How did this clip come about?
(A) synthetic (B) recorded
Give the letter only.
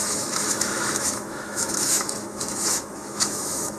A